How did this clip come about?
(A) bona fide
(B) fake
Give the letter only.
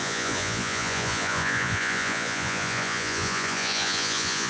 B